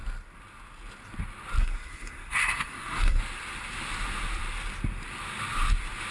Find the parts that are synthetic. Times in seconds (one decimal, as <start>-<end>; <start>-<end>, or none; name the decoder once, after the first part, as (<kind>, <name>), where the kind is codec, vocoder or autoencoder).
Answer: 1.6-3.2 (codec, SNAC)